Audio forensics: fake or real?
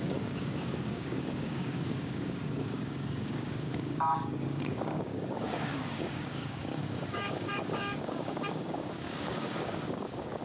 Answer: fake